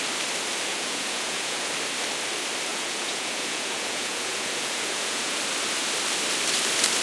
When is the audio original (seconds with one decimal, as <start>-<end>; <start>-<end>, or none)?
0.0-0.7; 1.7-2.7; 5.4-7.0